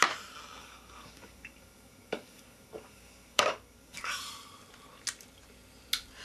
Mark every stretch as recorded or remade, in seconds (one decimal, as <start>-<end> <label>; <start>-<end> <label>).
0.0-0.6 recorded; 0.6-4.1 remade; 4.1-6.2 recorded